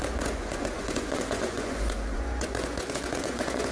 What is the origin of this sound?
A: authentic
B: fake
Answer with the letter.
B